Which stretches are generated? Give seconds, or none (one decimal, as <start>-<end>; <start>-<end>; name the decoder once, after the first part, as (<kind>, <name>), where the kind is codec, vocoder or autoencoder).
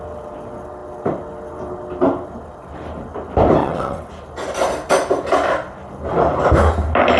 3.6-4.1 (vocoder, WaveNeXt)